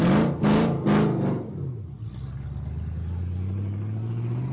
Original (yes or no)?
yes